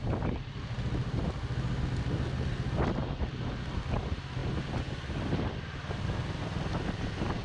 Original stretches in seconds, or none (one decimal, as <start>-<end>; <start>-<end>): 0.0-7.4